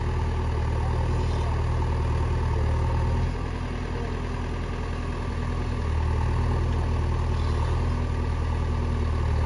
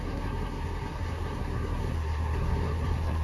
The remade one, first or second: second